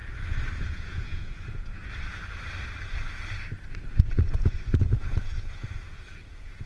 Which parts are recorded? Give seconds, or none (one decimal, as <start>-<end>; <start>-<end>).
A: 0.0-0.5; 1.8-3.9